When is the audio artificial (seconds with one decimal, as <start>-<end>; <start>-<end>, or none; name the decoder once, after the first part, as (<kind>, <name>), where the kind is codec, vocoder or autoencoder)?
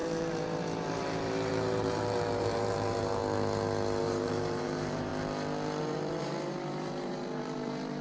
0.0-3.2 (vocoder, BigVGAN v2); 4.0-5.1; 5.8-8.0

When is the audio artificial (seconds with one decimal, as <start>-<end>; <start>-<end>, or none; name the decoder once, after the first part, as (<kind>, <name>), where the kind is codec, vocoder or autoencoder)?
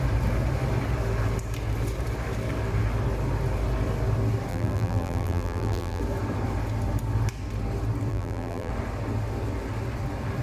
4.5-6.0 (vocoder, BigVGAN v2); 8.1-8.7